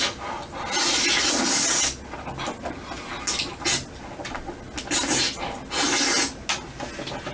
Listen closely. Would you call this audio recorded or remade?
recorded